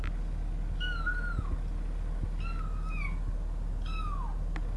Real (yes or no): yes